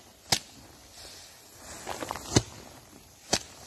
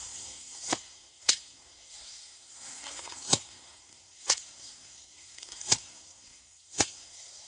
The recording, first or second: first